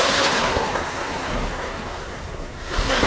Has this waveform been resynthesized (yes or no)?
yes